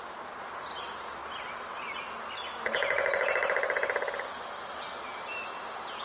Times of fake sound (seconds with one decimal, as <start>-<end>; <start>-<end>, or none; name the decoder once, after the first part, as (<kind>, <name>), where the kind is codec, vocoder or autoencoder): none